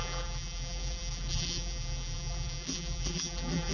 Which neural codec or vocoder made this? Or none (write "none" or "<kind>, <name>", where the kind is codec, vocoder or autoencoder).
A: vocoder, BigVGAN v2